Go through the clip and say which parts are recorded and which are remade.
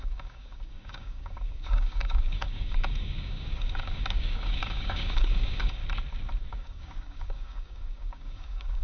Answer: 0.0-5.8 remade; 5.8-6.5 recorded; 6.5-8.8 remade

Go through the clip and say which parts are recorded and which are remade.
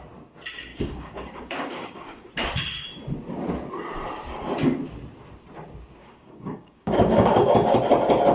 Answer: 0.0-0.7 recorded; 0.7-2.3 remade; 2.3-6.0 recorded; 6.0-7.8 remade; 7.8-8.3 recorded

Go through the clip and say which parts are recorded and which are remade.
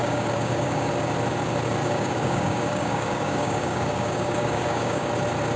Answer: 0.0-0.9 remade; 0.9-1.8 recorded; 1.8-5.1 remade; 5.1-5.6 recorded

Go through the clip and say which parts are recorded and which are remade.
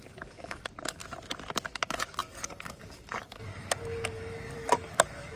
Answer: 0.0-1.0 remade; 1.0-1.7 recorded; 1.7-5.4 remade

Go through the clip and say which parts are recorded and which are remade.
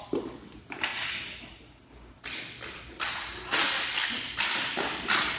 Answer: 0.0-5.4 recorded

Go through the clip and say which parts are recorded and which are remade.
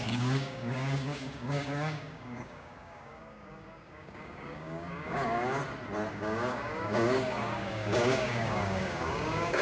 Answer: 0.0-5.6 remade; 5.6-6.1 recorded; 6.1-9.6 remade